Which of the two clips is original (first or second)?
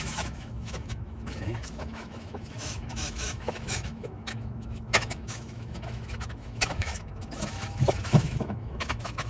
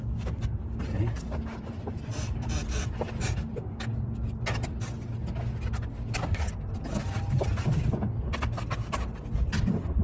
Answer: second